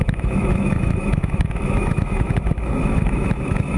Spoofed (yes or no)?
yes